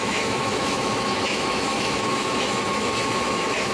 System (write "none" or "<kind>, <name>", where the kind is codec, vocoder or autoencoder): autoencoder, DAC-VAE